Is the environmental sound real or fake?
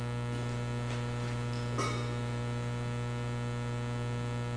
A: real